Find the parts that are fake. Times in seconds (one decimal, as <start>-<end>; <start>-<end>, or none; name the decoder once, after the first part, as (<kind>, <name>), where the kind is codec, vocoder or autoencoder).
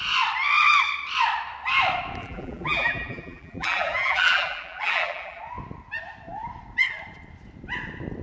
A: 2.2-5.4 (vocoder, BigVGAN v2)